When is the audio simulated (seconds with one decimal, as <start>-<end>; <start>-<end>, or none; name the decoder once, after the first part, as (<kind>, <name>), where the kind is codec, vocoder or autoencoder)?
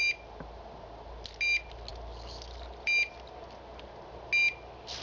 none